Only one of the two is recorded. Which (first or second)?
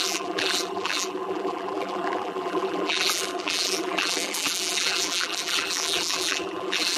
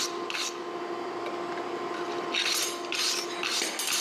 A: second